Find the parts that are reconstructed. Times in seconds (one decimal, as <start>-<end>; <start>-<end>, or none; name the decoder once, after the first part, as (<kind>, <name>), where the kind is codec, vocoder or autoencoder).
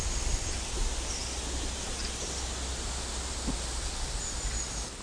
none